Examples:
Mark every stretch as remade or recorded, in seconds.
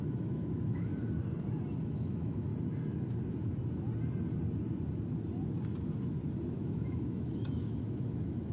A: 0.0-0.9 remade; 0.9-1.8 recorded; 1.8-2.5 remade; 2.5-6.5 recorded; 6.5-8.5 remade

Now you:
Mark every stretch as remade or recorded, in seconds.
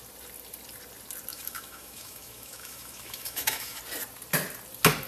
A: 0.0-1.3 recorded; 1.3-3.8 remade; 3.8-5.1 recorded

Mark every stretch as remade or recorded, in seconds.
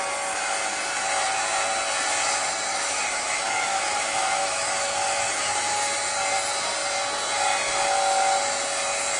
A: 0.0-2.7 recorded; 2.7-5.4 remade; 5.4-9.2 recorded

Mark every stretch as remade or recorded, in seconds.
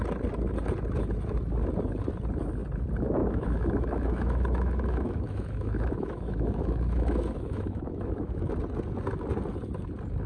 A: 0.0-3.2 recorded; 3.2-8.5 remade; 8.5-10.3 recorded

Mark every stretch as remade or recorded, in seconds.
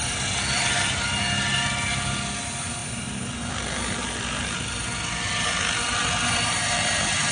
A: 0.0-7.3 recorded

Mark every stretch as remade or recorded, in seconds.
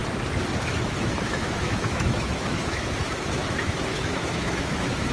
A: 0.0-0.7 recorded; 0.7-5.1 remade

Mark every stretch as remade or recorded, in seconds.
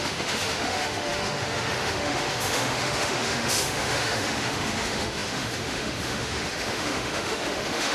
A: 0.0-7.9 remade